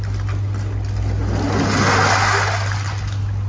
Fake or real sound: real